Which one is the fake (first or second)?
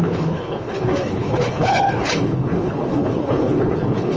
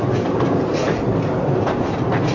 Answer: first